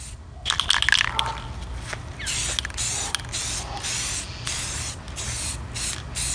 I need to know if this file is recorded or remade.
recorded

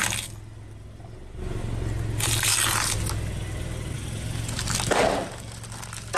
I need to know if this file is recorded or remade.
recorded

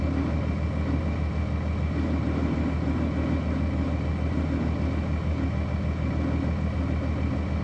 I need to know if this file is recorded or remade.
recorded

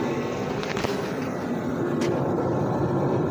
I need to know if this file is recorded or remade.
recorded